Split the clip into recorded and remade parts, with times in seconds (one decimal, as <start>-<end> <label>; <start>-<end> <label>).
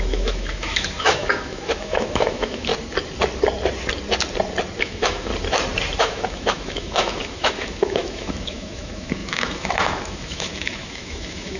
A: 0.0-2.7 remade; 2.7-4.8 recorded; 4.8-5.3 remade; 5.3-6.0 recorded; 6.0-11.6 remade